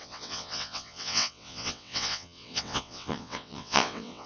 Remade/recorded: remade